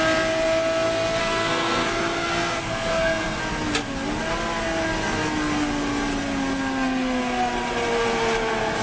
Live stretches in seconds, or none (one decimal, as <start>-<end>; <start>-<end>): 0.0-1.2; 3.4-8.8